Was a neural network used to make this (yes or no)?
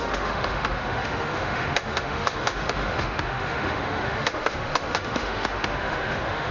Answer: yes